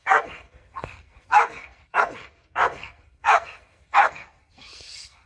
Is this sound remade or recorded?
remade